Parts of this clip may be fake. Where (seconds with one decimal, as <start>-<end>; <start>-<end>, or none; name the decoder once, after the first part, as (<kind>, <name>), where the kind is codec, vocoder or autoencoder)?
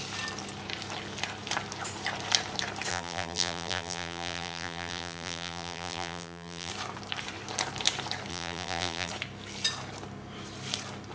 2.9-6.7 (vocoder, BigVGAN v2); 8.3-9.1